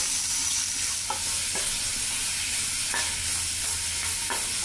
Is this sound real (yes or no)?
yes